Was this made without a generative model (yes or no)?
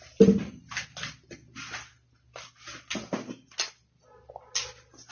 yes